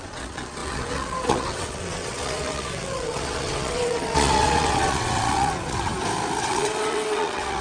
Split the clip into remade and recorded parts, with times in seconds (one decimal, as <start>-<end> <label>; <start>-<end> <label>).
0.0-5.9 remade; 5.9-6.4 recorded; 6.4-7.6 remade